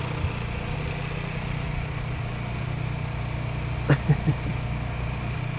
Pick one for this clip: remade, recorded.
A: recorded